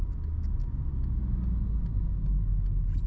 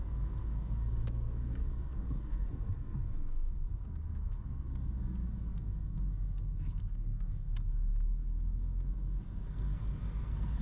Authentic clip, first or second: first